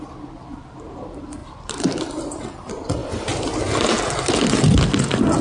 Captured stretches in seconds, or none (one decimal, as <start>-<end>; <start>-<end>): 0.0-1.4; 2.4-5.4